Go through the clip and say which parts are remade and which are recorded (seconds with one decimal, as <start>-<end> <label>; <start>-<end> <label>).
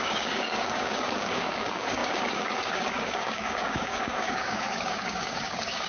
0.0-5.9 remade